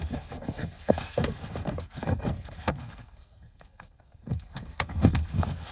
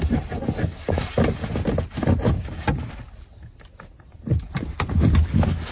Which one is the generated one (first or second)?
first